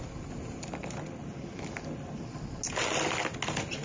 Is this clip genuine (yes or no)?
yes